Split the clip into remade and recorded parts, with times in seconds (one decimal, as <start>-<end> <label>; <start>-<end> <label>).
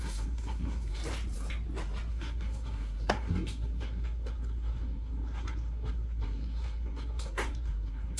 0.0-1.0 remade; 1.0-2.1 recorded; 2.1-8.2 remade